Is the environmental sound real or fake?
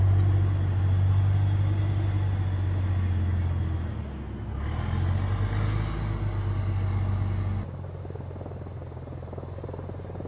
real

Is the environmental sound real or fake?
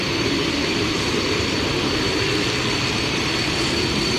real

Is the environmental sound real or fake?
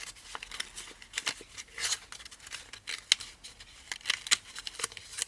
real